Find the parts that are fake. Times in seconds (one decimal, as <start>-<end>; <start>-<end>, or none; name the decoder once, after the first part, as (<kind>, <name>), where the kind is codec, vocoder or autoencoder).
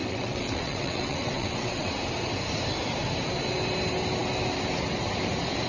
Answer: 0.0-1.9 (vocoder, WaveNeXt)